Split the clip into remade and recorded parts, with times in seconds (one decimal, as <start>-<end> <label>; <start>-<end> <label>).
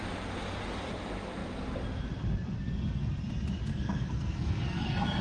0.0-3.7 recorded; 3.7-5.2 remade